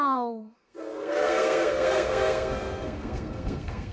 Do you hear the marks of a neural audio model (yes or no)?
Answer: yes